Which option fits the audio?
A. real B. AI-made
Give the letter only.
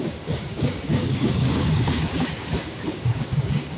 B